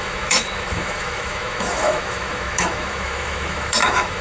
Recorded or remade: remade